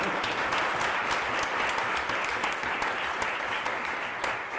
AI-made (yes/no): no